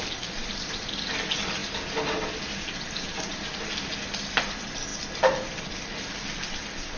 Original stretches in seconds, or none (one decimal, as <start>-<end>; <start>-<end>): 0.0-7.0